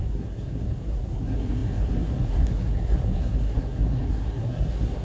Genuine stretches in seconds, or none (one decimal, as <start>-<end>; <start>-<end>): none